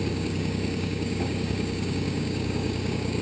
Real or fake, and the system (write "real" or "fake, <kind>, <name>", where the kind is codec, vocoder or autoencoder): fake, codec, DAC